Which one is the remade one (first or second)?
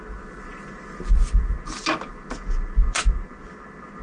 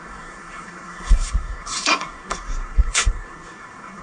second